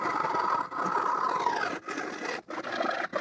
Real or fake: real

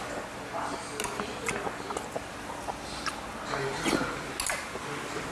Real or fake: real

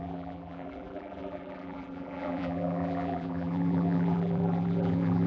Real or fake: fake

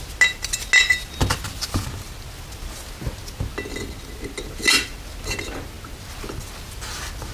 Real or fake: real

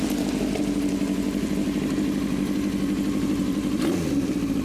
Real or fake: fake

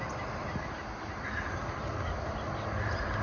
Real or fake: real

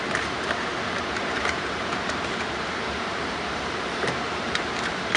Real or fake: fake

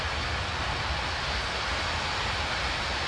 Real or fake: real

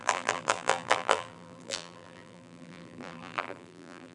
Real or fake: fake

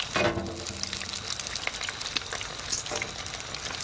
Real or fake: real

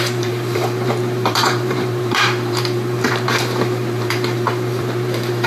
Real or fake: fake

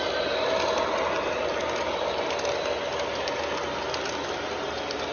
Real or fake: real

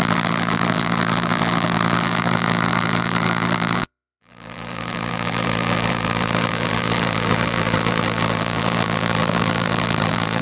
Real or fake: fake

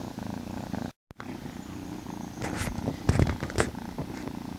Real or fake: real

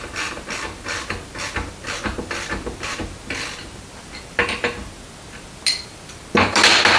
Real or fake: real